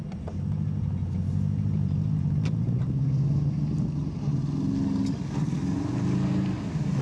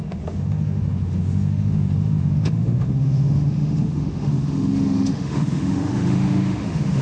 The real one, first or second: first